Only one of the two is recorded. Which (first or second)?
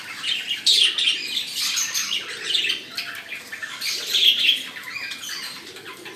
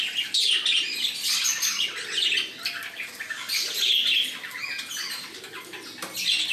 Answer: second